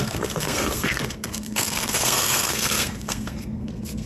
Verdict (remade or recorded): remade